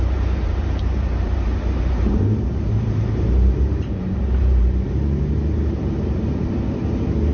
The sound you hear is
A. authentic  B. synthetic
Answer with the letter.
B